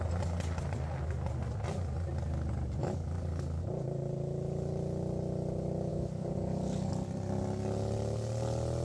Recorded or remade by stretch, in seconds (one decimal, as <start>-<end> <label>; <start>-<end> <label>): 0.0-2.8 recorded; 2.8-3.6 remade; 3.6-5.9 recorded; 5.9-6.9 remade; 6.9-8.8 recorded

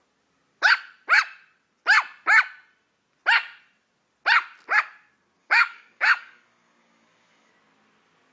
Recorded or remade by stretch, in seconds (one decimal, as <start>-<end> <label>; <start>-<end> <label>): 0.0-5.4 recorded; 5.4-7.5 remade; 7.5-8.3 recorded